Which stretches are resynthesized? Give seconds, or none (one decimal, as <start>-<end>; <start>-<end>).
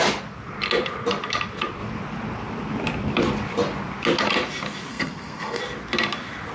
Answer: 4.9-5.6